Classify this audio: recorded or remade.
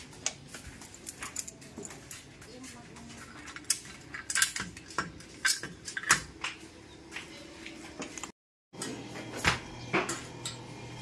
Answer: recorded